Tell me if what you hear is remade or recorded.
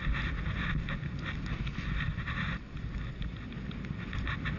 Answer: recorded